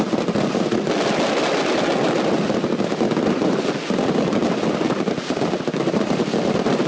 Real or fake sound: real